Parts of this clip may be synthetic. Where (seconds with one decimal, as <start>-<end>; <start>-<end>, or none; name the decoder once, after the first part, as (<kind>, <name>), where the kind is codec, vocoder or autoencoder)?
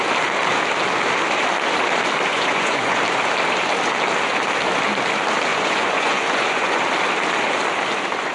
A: 2.3-3.0 (vocoder, Vocos); 5.5-6.8